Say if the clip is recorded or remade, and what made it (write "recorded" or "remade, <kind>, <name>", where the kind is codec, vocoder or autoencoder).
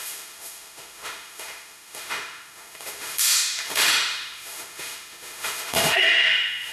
remade, autoencoder, DAC-VAE